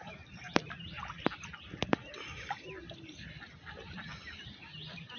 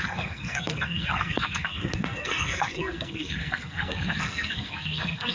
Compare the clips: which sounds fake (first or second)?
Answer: second